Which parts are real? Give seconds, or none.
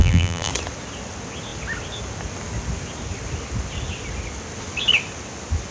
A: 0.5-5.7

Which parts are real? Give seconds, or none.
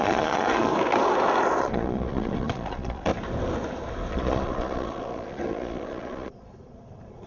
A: 0.7-1.6; 3.1-4.1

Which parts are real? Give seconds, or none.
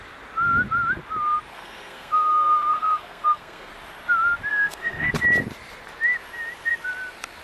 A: 0.0-1.5; 3.7-4.5; 5.1-7.4